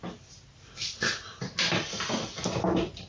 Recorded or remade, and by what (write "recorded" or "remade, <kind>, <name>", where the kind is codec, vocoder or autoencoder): recorded